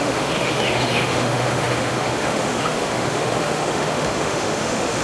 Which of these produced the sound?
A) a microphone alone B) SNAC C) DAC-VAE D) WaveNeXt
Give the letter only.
C